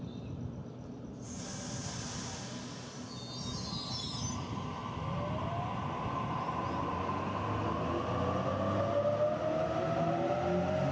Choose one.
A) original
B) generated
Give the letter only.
A